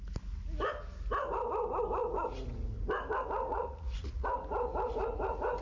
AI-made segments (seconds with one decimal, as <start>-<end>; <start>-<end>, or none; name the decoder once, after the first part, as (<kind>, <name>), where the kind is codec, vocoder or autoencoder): 3.5-4.3 (vocoder, Vocos)